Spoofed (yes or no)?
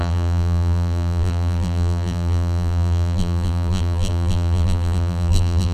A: yes